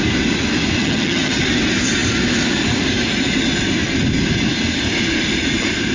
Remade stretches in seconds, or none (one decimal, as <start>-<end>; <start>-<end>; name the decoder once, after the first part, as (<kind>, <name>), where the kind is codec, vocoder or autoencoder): 0.8-1.4 (vocoder, HiFi-GAN)